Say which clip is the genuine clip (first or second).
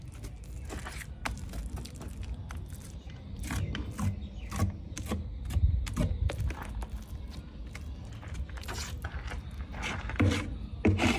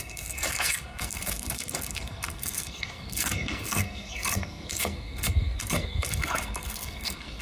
first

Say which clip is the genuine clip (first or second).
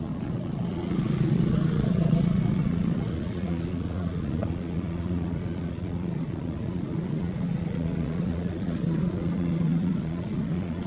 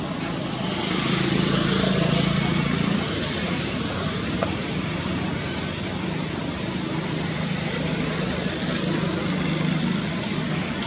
second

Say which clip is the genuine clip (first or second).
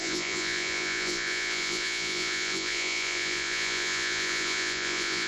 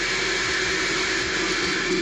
second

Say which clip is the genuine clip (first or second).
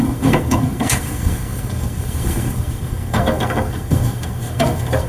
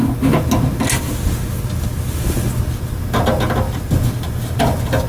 second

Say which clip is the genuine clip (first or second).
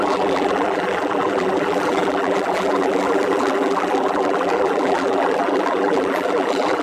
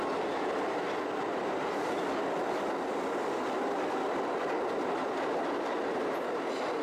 second